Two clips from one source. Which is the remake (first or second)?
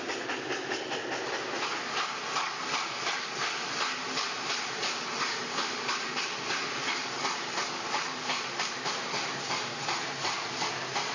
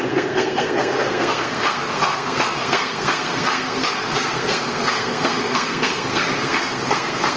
second